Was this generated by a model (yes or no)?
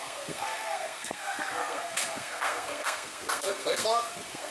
yes